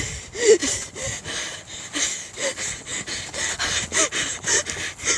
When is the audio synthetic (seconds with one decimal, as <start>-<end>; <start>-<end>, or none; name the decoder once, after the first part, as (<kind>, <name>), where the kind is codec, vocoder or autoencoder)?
0.6-1.2 (vocoder, BigVGAN v2)